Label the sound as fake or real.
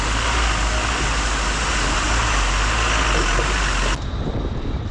real